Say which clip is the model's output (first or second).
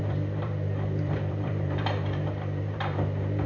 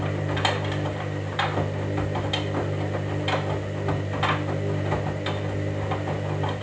first